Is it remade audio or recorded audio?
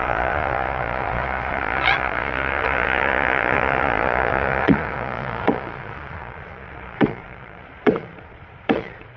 remade